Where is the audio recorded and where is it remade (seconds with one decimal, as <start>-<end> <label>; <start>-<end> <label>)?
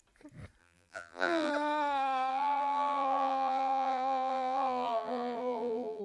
0.0-0.6 recorded; 0.6-1.5 remade; 1.5-2.3 recorded; 2.3-6.0 remade